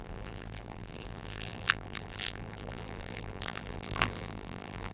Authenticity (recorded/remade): remade